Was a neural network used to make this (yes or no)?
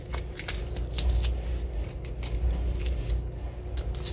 no